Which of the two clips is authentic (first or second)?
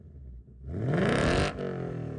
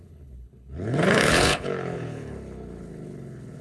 first